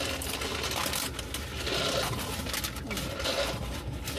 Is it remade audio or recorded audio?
recorded